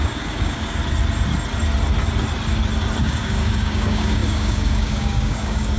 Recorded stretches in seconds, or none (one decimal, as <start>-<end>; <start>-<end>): 0.8-3.0